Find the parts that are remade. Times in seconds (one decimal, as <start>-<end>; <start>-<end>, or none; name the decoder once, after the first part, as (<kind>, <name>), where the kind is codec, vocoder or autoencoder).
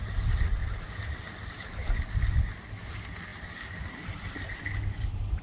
none